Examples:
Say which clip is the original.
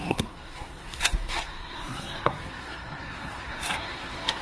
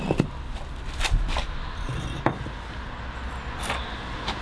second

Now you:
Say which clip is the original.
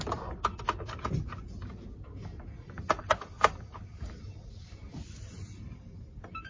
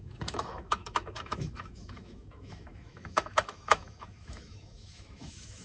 first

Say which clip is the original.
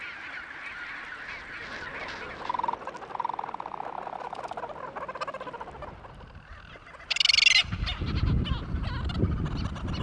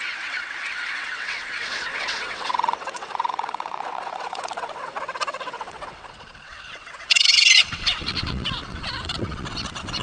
first